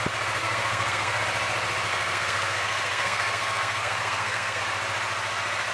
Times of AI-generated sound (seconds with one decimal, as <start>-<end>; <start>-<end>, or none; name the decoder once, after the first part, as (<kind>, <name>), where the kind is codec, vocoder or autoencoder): 0.4-1.2 (codec, SNAC); 1.9-4.6